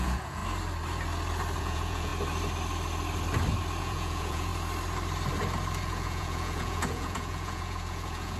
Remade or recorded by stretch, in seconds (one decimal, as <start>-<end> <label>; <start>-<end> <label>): 0.0-0.4 remade; 0.4-1.6 recorded; 1.6-2.1 remade; 2.1-3.8 recorded; 3.8-4.5 remade; 4.5-5.8 recorded; 5.8-8.4 remade